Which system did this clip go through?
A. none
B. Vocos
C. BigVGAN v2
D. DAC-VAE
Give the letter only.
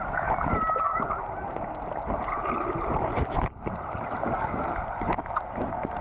A